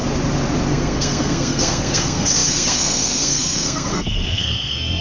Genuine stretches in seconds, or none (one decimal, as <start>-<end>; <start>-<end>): 0.0-0.7